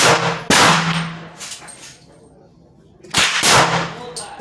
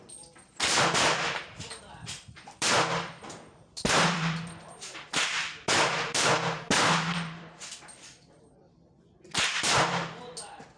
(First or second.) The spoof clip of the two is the second